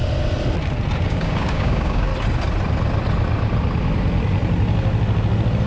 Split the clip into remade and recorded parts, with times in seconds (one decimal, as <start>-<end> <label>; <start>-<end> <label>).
0.0-1.0 recorded; 1.0-2.1 remade; 2.1-5.7 recorded